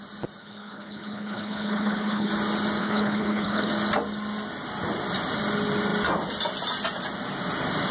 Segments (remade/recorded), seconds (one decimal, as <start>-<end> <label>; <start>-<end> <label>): 0.0-0.4 recorded; 0.4-2.3 remade; 2.3-2.8 recorded; 2.8-3.7 remade; 3.7-7.9 recorded